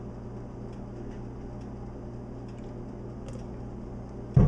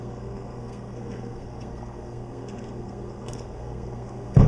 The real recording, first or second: first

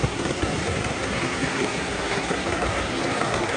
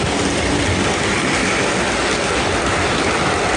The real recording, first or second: second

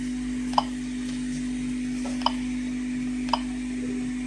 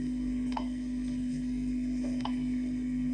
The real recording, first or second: first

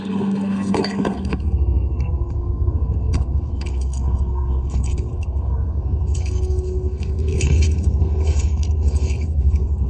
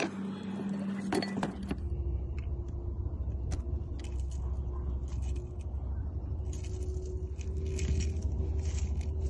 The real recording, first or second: second